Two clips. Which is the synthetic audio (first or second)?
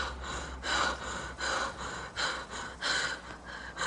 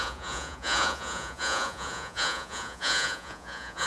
second